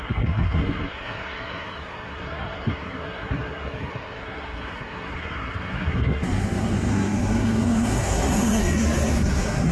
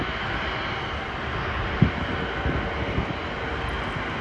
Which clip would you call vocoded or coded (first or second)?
first